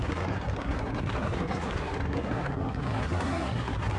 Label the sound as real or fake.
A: fake